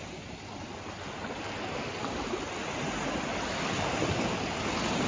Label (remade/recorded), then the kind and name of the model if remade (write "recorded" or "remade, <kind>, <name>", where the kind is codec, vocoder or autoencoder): recorded